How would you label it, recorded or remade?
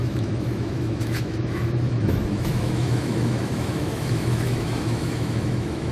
remade